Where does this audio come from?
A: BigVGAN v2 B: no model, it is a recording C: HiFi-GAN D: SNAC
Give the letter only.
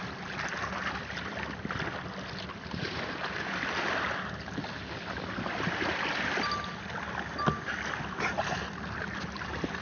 B